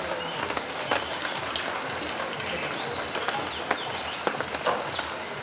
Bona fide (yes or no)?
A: yes